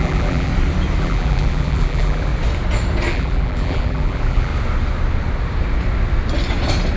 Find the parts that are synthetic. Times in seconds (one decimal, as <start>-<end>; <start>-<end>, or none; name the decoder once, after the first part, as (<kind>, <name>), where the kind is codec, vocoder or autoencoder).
0.0-0.5 (vocoder, BigVGAN v2); 1.0-2.3; 3.1-4.5